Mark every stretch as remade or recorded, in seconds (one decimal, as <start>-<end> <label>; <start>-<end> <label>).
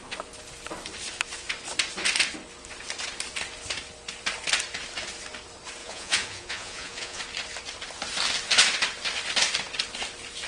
0.0-5.8 recorded; 5.8-7.2 remade; 7.2-10.5 recorded